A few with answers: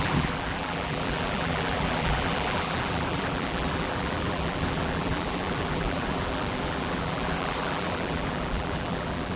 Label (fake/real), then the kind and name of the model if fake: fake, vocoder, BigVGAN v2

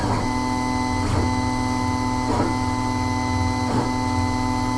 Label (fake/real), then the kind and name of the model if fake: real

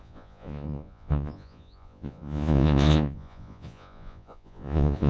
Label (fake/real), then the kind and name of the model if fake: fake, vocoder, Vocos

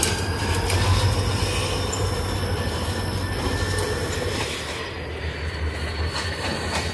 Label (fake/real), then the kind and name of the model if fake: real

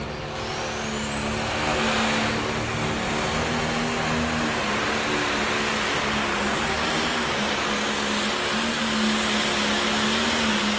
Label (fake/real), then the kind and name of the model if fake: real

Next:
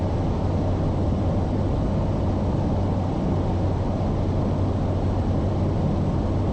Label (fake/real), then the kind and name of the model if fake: real